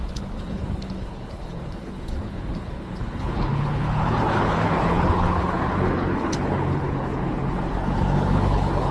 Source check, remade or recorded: remade